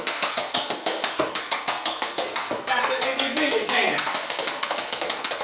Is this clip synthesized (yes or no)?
yes